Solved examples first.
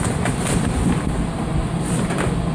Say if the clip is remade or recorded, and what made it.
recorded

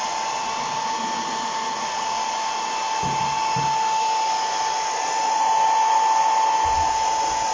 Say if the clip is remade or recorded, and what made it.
recorded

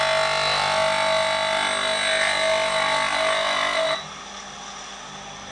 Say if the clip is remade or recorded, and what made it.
recorded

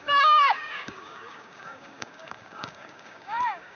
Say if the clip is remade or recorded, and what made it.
remade, codec, DAC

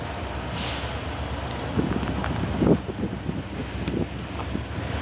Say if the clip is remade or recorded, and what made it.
recorded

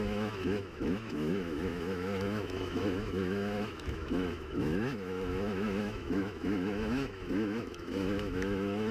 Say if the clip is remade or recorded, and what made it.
remade, autoencoder, DAC-VAE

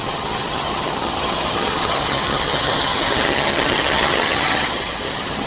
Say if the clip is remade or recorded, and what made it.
remade, vocoder, HiFi-GAN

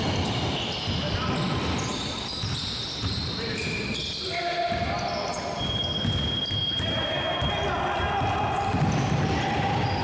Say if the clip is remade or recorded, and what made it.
recorded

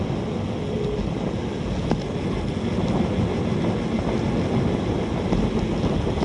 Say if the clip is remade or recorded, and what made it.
recorded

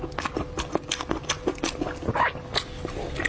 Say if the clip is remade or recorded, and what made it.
recorded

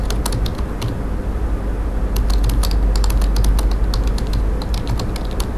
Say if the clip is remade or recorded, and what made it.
recorded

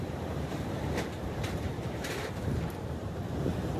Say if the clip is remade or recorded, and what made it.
remade, vocoder, BigVGAN v2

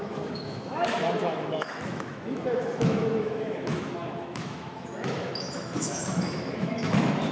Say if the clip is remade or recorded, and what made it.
remade, autoencoder, DAC-VAE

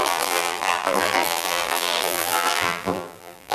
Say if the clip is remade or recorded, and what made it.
remade, vocoder, BigVGAN v2